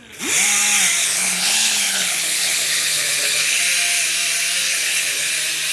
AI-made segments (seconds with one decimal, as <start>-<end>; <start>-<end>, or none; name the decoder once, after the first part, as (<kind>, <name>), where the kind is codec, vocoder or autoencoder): 1.0-3.6 (codec, HILCodec); 4.6-5.3